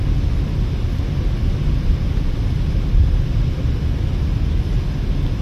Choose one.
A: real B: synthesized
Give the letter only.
A